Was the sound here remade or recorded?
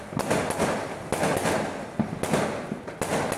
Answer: recorded